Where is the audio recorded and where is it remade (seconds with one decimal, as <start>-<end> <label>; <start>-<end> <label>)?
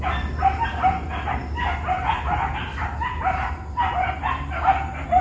0.0-5.2 recorded